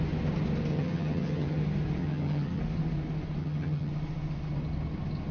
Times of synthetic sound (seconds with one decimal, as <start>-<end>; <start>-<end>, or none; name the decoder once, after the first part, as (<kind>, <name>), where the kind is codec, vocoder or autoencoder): 0.7-1.6 (vocoder, HiFi-GAN); 2.0-2.6; 3.4-3.9